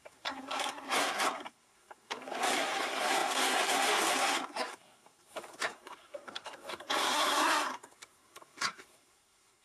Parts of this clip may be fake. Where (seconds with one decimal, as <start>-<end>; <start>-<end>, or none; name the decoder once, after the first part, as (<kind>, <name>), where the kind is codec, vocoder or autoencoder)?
0.0-9.6 (codec, SNAC)